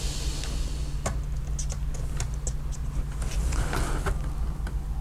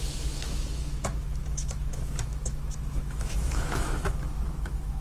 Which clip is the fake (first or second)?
second